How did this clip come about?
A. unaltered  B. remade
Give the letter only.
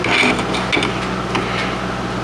A